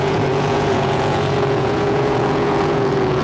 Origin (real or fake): fake